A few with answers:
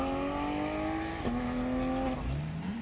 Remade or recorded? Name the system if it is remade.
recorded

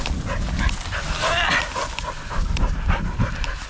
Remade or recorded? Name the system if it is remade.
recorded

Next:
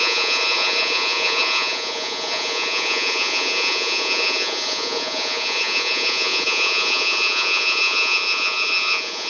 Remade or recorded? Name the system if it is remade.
remade, vocoder, Vocos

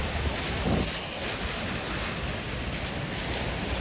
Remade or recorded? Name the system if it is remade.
recorded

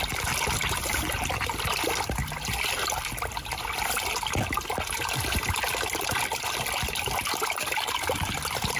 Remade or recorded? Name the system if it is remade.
recorded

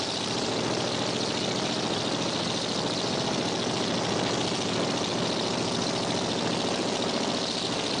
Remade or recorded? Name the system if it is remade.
recorded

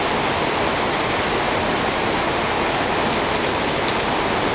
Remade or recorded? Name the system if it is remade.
recorded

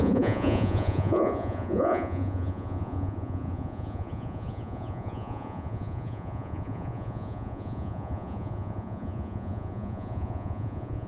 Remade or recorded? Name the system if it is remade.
remade, vocoder, Vocos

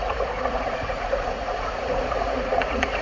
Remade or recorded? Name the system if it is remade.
remade, vocoder, Vocos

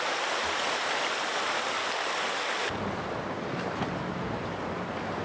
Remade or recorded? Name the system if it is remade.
recorded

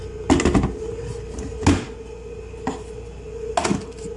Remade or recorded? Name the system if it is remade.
recorded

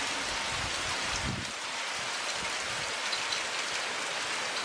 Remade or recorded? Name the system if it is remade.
recorded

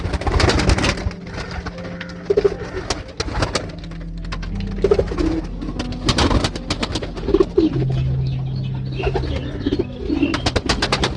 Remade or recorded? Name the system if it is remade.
recorded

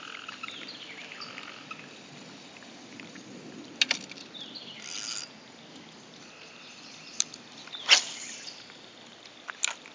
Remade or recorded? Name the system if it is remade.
recorded